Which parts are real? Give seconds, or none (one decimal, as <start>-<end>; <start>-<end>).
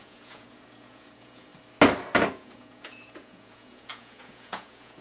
1.5-2.3